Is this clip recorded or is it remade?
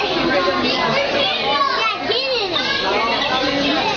recorded